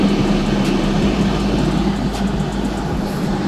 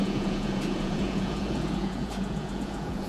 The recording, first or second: first